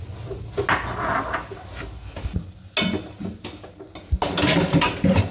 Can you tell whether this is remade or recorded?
recorded